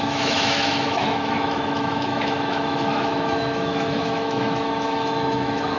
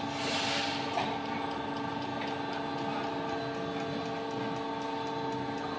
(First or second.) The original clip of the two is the second